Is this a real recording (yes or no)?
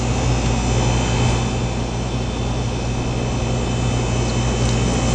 yes